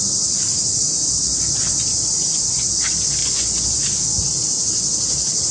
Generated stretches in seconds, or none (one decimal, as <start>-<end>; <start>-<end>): 1.9-2.7; 3.2-3.8